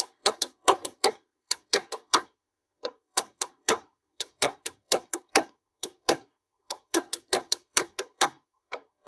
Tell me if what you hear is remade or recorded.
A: remade